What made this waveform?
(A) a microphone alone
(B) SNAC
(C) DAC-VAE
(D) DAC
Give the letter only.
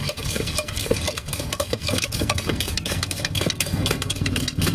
B